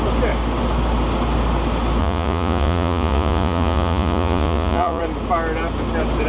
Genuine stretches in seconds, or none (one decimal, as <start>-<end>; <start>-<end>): 0.0-2.0; 5.0-6.3